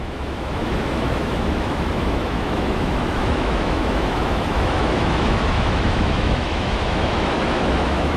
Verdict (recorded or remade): remade